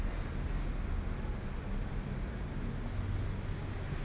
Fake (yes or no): no